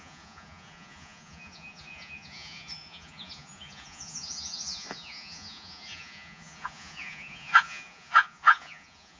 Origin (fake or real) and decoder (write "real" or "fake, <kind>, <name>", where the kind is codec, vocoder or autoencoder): fake, vocoder, Vocos